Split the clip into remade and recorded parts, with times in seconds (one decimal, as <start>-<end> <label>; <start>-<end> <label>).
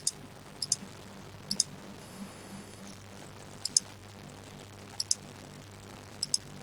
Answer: 0.0-2.0 recorded; 2.0-2.8 remade; 2.8-6.6 recorded